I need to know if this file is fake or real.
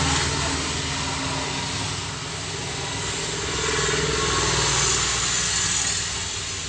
real